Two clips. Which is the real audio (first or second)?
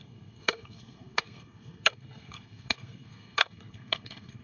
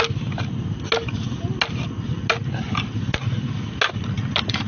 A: second